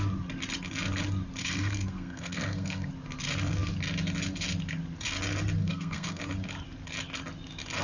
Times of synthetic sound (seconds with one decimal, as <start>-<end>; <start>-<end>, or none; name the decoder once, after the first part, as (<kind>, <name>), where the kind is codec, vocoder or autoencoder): 1.4-2.9 (codec, SNAC); 5.6-6.2